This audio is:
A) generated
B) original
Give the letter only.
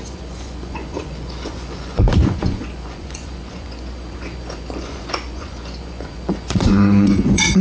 A